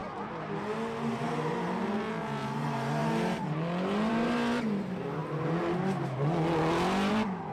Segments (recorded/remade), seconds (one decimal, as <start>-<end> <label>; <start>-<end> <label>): 0.0-7.5 recorded